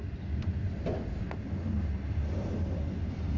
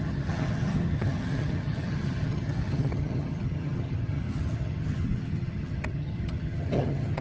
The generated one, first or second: second